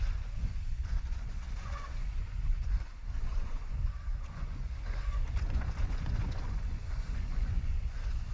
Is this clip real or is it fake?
fake